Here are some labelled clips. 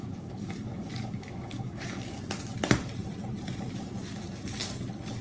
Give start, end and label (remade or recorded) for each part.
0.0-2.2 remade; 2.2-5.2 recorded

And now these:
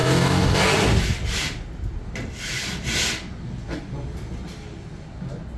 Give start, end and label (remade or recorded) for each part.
0.0-0.6 remade; 0.6-5.6 recorded

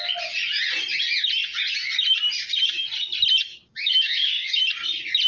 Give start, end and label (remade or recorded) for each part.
0.0-3.5 recorded; 3.5-4.6 remade; 4.6-5.3 recorded

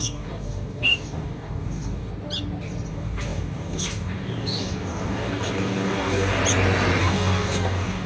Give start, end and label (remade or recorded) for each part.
0.0-2.1 remade; 2.1-2.9 recorded; 2.9-6.4 remade; 6.4-7.0 recorded; 7.0-8.1 remade

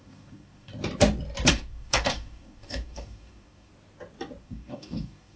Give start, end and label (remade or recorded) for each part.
0.0-0.7 remade; 0.7-1.5 recorded; 1.5-3.7 remade; 3.7-4.4 recorded; 4.4-5.4 remade

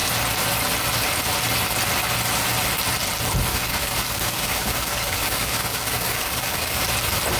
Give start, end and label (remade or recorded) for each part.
0.0-3.5 recorded; 3.5-6.8 remade; 6.8-7.4 recorded

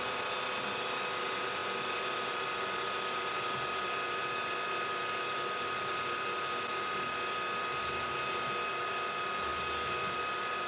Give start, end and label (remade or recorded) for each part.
0.0-10.7 recorded

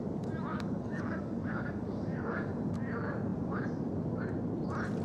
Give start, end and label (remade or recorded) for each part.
0.0-0.5 recorded; 0.5-2.5 remade; 2.5-5.0 recorded